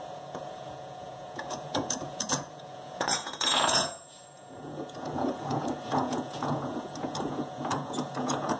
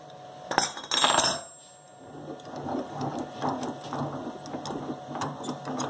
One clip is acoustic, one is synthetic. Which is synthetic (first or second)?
first